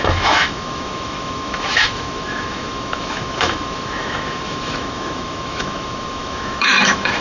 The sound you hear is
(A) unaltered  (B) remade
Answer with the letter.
B